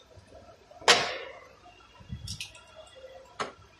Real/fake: real